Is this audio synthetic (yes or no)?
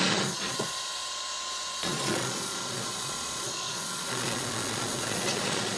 yes